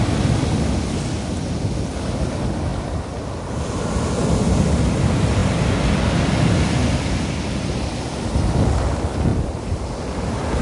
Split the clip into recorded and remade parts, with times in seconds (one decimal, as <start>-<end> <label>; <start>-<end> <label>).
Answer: 0.0-2.7 recorded; 2.7-3.3 remade; 3.3-9.3 recorded; 9.3-10.0 remade; 10.0-10.6 recorded